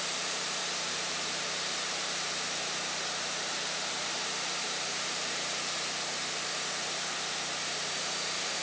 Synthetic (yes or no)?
yes